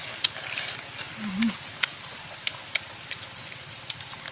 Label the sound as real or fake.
real